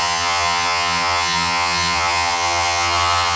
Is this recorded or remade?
remade